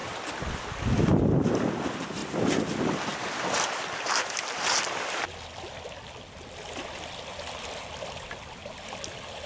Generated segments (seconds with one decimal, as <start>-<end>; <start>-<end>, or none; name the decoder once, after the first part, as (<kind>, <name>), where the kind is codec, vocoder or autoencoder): none